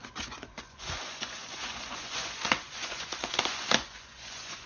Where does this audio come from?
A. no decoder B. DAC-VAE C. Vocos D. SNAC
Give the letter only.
C